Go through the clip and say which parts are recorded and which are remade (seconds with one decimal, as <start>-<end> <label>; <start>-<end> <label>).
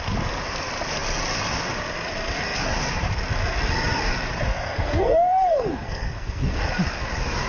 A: 0.0-4.5 recorded; 4.5-6.6 remade; 6.6-7.5 recorded